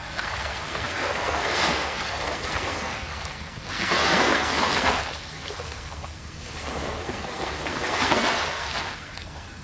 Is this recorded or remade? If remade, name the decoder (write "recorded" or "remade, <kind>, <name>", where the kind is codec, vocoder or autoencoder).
remade, codec, SNAC